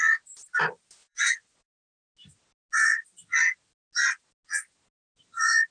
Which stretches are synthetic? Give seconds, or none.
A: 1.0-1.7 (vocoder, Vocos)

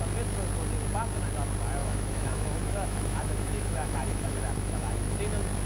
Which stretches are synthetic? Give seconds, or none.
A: 1.8-5.2 (autoencoder, DAC-VAE)